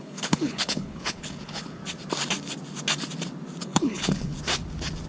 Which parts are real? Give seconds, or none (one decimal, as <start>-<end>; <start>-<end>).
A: 1.8-3.6; 4.3-5.1